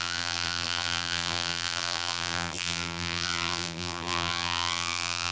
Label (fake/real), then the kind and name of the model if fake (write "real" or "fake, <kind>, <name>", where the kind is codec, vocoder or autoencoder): fake, vocoder, BigVGAN v2